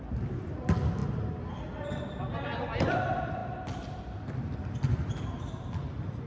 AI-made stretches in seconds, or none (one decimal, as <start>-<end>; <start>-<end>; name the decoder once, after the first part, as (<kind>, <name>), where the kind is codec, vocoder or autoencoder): none